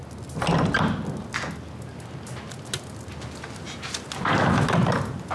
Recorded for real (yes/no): yes